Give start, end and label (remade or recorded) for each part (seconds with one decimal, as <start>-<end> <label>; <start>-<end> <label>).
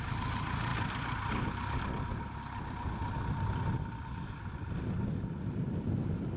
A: 0.0-0.7 remade; 0.7-4.3 recorded; 4.3-6.4 remade